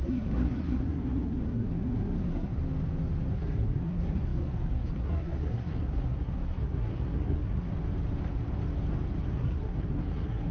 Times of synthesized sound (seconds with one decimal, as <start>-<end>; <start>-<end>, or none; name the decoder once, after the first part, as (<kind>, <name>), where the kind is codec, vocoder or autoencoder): 0.0-2.6 (codec, SNAC); 3.3-7.7; 9.2-10.5